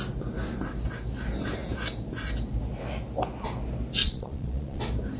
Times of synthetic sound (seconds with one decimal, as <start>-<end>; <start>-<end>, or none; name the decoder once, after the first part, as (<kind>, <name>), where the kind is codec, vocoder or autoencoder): 4.0-4.8 (vocoder, Vocos)